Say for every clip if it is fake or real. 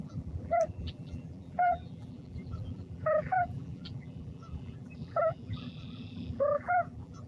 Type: fake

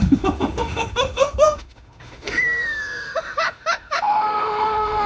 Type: fake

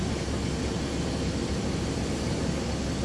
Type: real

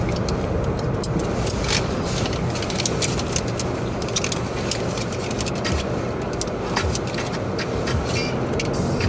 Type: real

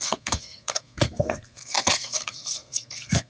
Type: fake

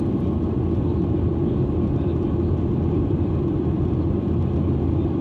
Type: real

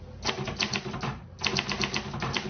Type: real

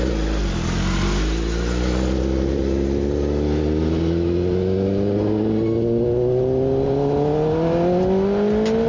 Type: real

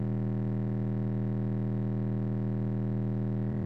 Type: fake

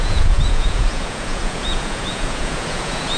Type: fake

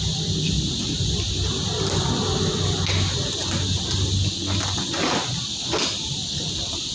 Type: real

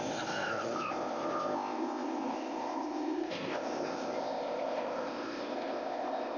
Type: fake